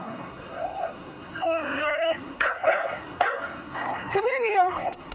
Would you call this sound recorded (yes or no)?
no